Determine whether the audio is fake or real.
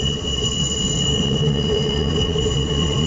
fake